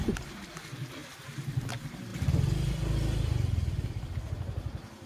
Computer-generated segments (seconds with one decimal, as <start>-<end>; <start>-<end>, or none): none